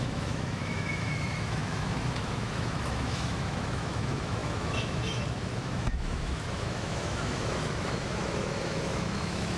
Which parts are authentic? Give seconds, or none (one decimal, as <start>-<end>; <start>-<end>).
none